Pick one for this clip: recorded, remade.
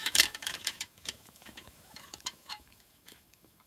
remade